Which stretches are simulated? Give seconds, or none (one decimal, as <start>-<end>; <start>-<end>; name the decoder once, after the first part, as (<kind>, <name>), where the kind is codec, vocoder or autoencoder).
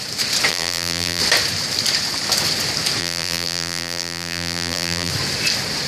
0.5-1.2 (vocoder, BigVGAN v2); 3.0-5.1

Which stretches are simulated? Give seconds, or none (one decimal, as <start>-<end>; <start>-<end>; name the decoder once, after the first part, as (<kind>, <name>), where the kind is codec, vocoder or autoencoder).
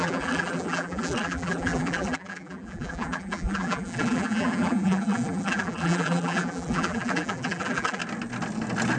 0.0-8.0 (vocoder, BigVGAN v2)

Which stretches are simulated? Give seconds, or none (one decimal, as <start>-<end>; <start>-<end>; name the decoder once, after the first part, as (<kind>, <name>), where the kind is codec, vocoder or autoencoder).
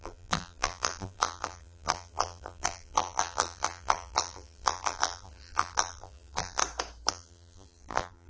0.0-6.6 (vocoder, BigVGAN v2); 7.1-8.3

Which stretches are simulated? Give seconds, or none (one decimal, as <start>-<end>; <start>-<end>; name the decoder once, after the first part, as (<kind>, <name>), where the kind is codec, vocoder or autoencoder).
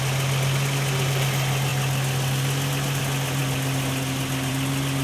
none